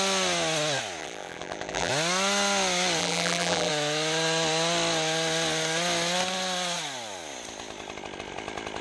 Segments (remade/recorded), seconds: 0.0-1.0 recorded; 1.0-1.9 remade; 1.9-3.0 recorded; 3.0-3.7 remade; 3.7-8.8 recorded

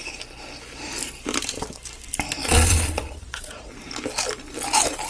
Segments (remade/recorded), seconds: 0.0-2.4 recorded; 2.4-3.7 remade; 3.7-5.1 recorded

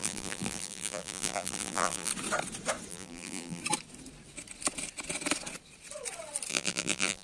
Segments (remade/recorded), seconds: 0.0-2.1 remade; 2.1-2.9 recorded; 2.9-3.6 remade; 3.6-6.5 recorded; 6.5-7.2 remade

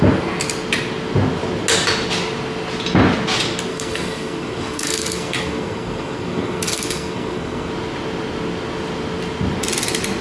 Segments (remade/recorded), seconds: 0.0-3.7 recorded; 3.7-7.7 remade; 7.7-10.2 recorded